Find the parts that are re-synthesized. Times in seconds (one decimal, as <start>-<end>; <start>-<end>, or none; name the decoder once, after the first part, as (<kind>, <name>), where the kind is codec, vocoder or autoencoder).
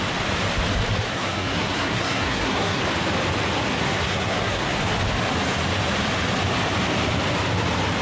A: 1.1-2.8 (codec, SNAC); 3.7-4.8